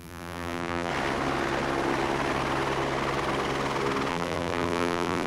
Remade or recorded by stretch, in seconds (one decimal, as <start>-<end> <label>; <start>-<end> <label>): 0.0-0.9 remade; 0.9-4.1 recorded; 4.1-5.3 remade